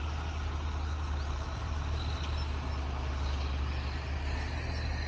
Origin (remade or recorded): recorded